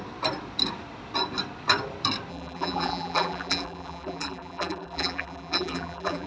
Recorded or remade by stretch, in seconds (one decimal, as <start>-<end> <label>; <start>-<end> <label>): 0.0-2.3 recorded; 2.3-6.3 remade